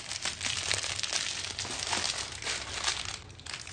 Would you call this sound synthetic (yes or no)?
no